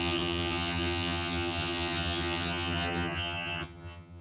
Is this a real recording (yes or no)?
no